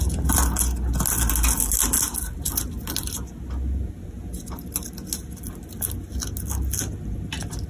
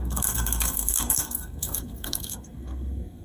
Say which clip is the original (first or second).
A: first